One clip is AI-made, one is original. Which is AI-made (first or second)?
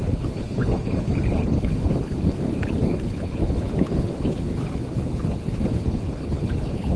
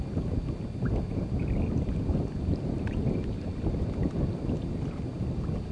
first